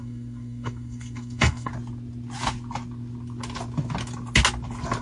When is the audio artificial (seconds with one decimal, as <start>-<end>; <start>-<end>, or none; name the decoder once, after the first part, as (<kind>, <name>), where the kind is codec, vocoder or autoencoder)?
0.0-1.7 (codec, SNAC)